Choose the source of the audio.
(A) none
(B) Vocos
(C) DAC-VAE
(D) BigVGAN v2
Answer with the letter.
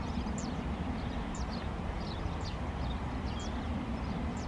A